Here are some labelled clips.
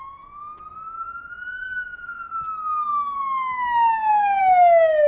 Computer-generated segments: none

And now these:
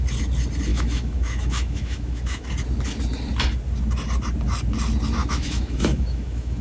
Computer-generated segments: 0.7-2.5 (autoencoder, DAC-VAE); 5.2-6.6